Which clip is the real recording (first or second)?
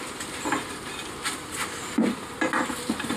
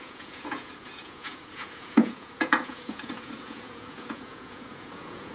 first